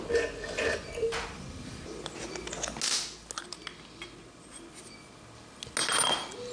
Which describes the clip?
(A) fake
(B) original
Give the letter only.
B